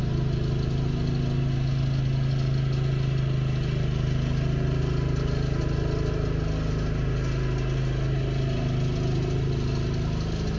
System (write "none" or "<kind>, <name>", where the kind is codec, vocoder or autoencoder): none